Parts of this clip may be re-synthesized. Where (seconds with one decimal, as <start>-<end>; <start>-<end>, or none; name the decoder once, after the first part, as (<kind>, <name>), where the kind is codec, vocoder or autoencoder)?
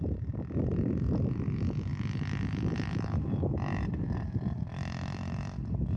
0.0-1.9 (vocoder, BigVGAN v2); 4.2-6.0